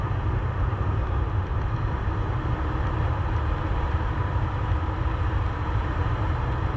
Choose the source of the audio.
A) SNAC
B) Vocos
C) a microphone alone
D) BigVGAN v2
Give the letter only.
D